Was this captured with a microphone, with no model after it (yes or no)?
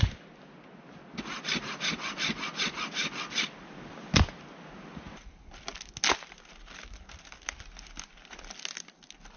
yes